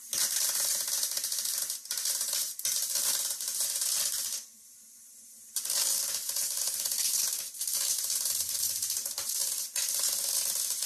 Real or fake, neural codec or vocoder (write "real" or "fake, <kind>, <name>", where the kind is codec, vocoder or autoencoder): real